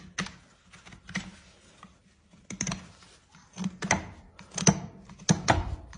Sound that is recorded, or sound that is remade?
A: recorded